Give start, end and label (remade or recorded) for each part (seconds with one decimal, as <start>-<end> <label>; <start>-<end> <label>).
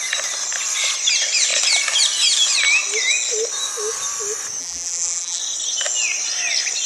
0.0-4.6 recorded; 4.6-5.4 remade; 5.4-6.9 recorded